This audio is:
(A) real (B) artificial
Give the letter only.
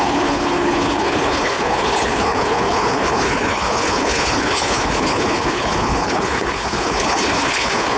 B